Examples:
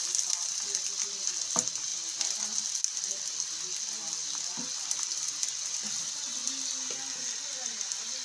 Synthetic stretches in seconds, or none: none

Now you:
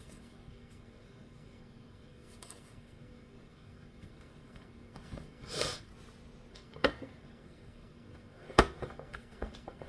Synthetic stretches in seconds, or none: 0.0-5.9 (codec, SNAC); 6.5-9.9

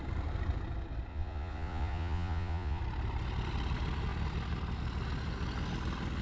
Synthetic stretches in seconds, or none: 1.1-2.8 (vocoder, Vocos)

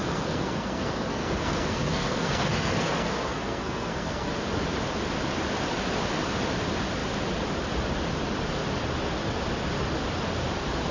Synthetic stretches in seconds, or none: 0.0-4.3 (codec, SNAC)

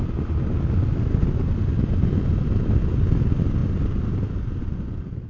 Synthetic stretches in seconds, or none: none